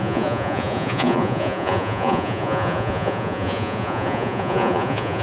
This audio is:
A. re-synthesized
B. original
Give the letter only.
A